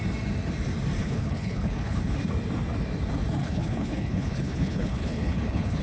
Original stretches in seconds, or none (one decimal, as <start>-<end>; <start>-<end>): 0.0-1.0; 2.0-3.4